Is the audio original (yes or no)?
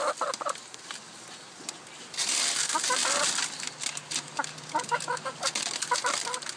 yes